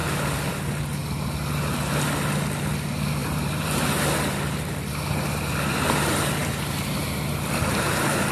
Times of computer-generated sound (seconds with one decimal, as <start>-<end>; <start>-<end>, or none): 3.2-4.0